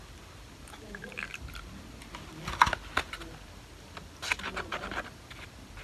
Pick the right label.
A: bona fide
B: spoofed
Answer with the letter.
A